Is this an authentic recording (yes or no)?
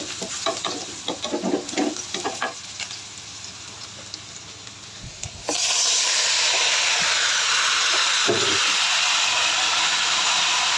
yes